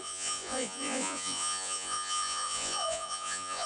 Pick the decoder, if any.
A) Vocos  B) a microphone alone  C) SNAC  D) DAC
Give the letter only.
A